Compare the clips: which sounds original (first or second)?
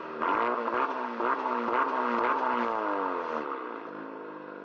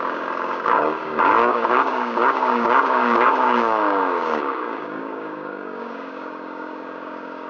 first